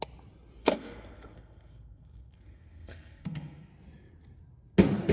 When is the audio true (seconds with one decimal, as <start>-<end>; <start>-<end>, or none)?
0.0-0.6; 3.7-5.1

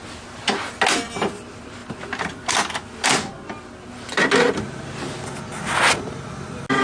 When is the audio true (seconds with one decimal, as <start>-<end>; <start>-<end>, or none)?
0.0-6.8

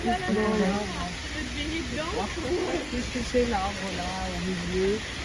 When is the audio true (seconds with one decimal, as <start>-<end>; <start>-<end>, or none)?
0.0-2.6; 3.3-5.2

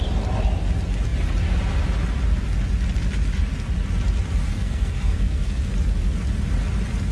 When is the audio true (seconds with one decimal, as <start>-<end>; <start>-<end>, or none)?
0.0-4.5; 5.6-7.1